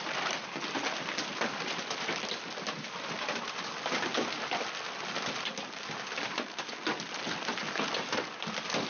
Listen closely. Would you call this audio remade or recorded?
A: recorded